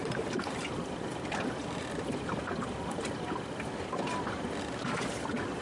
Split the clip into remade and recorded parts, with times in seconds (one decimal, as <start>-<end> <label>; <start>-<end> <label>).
0.0-5.6 recorded

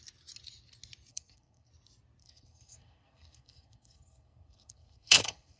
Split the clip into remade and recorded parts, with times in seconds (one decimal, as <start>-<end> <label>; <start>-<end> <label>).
0.0-1.1 recorded; 1.1-1.7 remade; 1.7-2.2 recorded; 2.2-5.6 remade

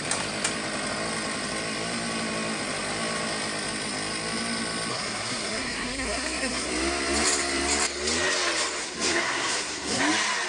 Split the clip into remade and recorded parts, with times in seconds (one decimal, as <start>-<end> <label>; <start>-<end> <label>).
0.0-4.9 recorded; 4.9-6.7 remade; 6.7-8.8 recorded; 8.8-10.0 remade; 10.0-10.5 recorded

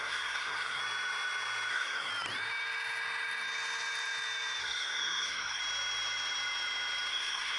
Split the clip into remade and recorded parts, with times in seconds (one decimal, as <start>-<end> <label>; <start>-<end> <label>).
0.0-0.8 remade; 0.8-1.7 recorded; 1.7-2.1 remade; 2.1-4.6 recorded; 4.6-5.6 remade; 5.6-7.1 recorded; 7.1-7.6 remade

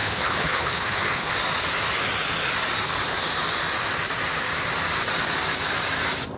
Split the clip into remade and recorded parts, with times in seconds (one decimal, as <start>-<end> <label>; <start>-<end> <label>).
0.0-1.3 remade; 1.3-6.4 recorded

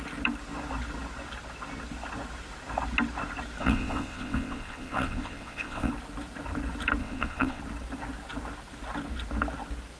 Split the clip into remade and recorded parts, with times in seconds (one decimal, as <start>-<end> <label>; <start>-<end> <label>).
0.0-3.6 recorded; 3.6-5.9 remade; 5.9-7.0 recorded; 7.0-7.6 remade; 7.6-10.0 recorded

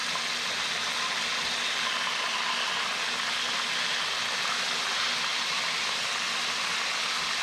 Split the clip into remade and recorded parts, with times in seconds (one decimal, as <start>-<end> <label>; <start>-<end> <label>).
0.0-5.3 recorded; 5.3-6.1 remade; 6.1-7.4 recorded